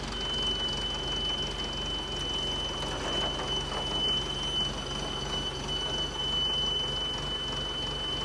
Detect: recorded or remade recorded